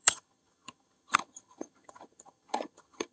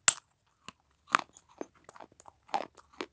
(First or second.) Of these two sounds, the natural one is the second